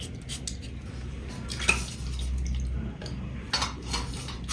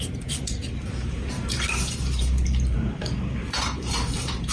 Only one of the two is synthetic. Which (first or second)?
second